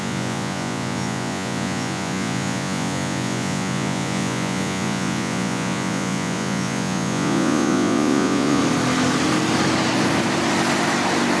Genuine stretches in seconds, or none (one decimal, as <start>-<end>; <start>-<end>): 8.6-11.4